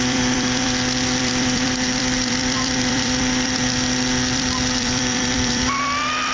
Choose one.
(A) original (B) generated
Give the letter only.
B